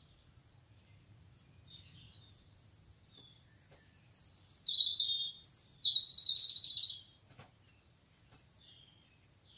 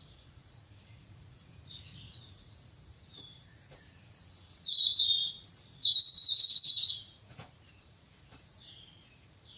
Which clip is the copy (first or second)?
second